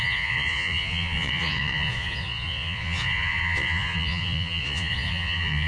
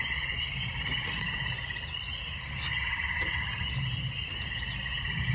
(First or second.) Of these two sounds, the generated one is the first